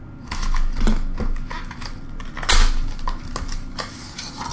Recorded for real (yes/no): yes